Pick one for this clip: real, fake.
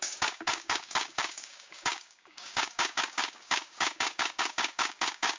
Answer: fake